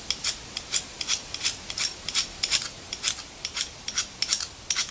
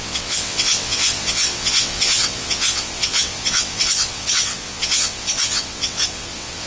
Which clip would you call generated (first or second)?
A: second